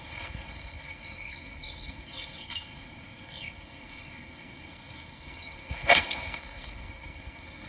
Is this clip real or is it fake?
fake